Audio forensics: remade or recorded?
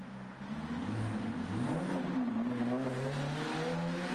recorded